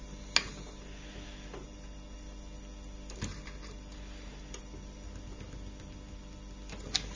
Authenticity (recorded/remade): recorded